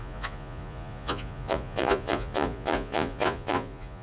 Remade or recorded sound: remade